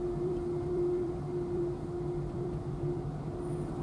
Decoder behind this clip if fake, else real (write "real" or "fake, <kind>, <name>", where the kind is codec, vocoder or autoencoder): fake, vocoder, BigVGAN v2